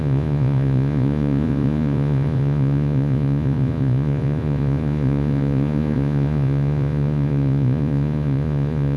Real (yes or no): no